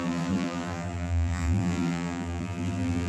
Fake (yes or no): yes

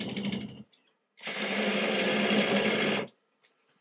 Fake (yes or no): no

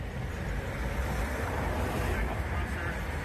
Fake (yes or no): yes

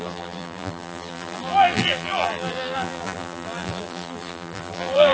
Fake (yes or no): yes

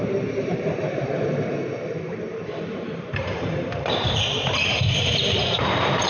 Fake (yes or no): yes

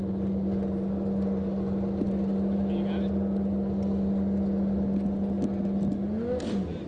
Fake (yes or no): no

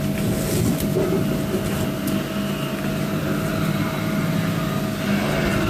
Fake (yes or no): no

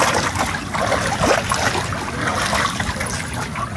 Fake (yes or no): no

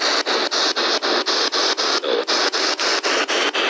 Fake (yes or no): no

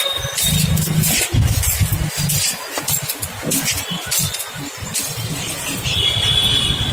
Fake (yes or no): no